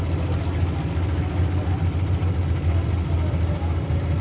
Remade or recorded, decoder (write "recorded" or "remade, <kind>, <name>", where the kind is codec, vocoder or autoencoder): recorded